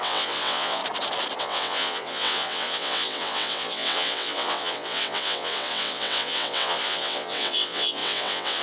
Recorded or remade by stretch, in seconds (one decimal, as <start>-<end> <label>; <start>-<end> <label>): 0.0-0.8 remade; 0.8-1.4 recorded; 1.4-8.6 remade